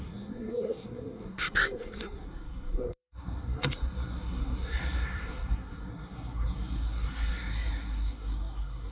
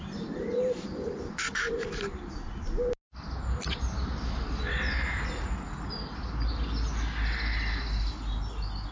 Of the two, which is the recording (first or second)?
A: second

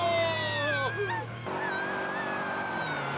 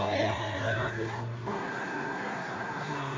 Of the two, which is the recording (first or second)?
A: first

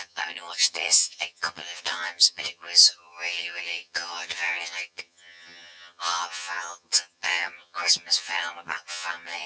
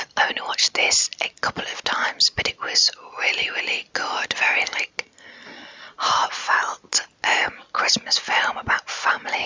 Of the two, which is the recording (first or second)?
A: second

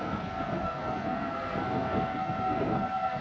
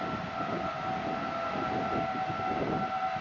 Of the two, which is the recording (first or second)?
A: second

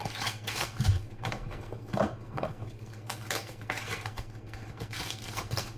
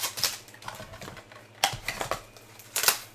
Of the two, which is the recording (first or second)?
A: second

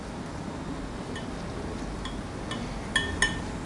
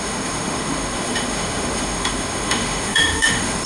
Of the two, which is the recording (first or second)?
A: first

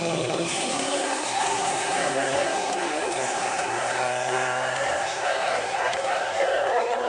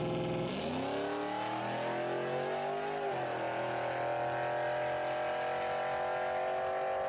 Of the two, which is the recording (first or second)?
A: second